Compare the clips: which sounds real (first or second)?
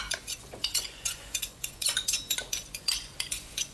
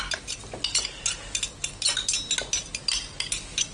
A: second